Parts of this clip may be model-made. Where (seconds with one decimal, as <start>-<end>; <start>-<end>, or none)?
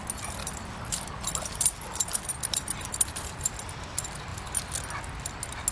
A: 0.4-3.8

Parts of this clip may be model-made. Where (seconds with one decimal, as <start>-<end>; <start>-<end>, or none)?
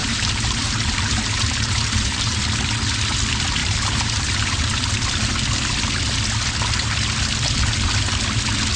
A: 0.0-2.4; 3.6-4.7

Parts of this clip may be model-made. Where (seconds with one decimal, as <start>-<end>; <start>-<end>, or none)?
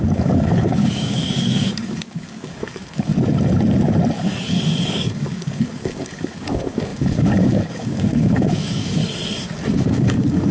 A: 0.0-3.1; 4.9-9.0; 9.8-10.5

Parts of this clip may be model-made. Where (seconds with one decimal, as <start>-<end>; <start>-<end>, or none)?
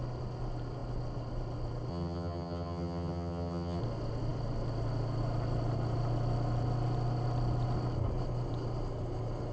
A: 1.9-3.8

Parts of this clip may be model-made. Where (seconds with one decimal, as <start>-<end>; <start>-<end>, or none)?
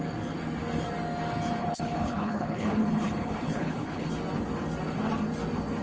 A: 1.6-4.1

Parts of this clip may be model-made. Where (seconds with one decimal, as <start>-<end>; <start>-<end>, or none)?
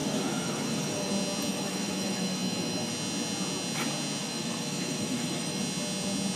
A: 0.0-1.1; 1.5-2.9; 4.2-5.6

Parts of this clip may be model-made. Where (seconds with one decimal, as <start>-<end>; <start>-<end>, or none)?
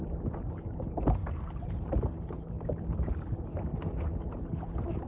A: none